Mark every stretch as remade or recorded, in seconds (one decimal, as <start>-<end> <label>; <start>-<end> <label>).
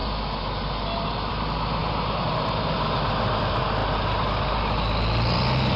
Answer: 0.0-5.8 recorded